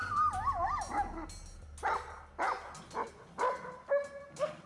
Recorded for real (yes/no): yes